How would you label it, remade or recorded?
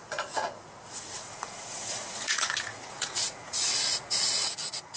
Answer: remade